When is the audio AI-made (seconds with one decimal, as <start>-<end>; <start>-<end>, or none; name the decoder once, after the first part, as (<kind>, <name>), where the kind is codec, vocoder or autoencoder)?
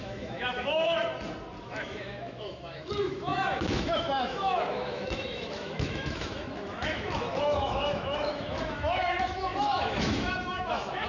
0.0-1.1 (autoencoder, DAC-VAE); 1.6-11.1